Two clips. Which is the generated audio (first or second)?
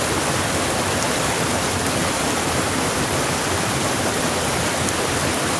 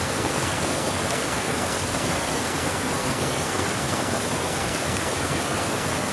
second